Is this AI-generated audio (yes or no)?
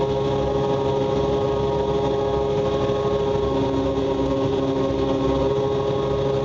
no